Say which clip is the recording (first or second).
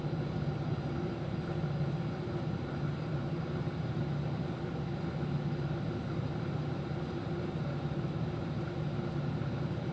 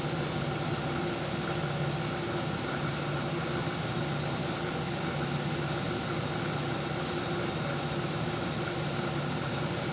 second